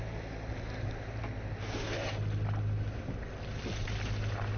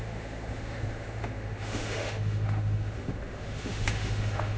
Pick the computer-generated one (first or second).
second